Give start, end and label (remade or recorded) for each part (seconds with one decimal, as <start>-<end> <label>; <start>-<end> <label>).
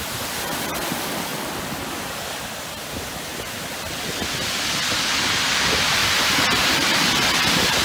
0.0-7.8 recorded